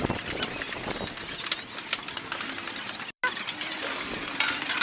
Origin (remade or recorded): recorded